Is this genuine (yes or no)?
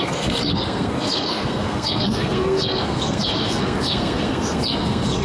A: no